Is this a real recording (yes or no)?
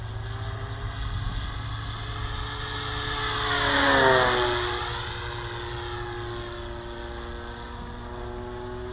yes